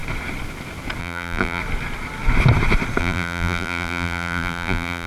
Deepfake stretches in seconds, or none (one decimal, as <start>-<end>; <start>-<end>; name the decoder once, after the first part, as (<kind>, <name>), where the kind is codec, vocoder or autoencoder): 1.0-1.6 (vocoder, BigVGAN v2); 3.0-5.1